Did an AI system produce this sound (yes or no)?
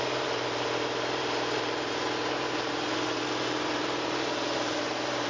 yes